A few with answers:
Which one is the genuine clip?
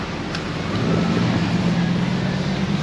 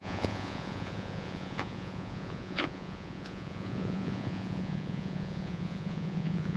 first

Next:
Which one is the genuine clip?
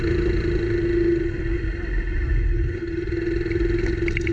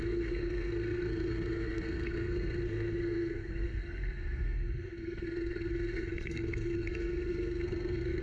first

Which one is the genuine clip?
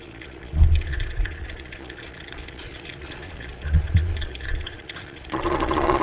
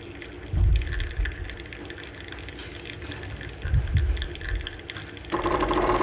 second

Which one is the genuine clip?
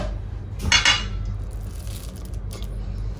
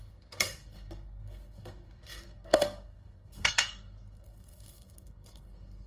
first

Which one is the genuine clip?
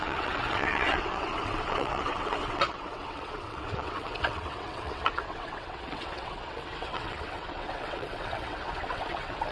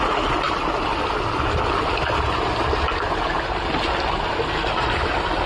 second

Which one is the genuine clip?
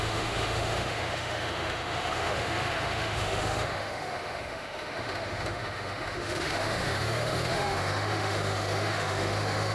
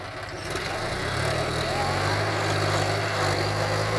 second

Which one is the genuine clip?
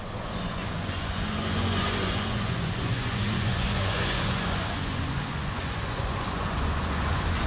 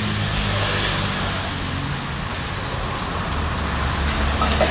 second